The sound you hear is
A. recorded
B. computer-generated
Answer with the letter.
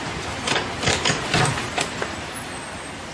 A